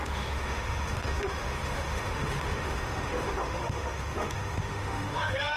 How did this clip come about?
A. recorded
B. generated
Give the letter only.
B